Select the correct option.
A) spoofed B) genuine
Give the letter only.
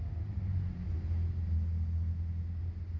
B